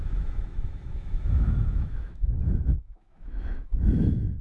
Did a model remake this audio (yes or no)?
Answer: yes